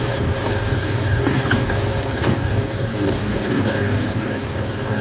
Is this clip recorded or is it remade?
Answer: remade